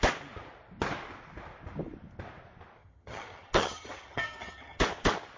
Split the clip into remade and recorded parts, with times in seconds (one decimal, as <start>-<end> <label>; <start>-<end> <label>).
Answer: 0.0-2.8 recorded; 2.8-4.8 remade; 4.8-5.4 recorded